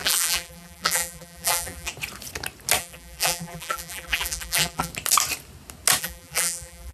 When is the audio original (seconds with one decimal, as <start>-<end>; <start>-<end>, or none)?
1.9-2.8; 4.9-6.0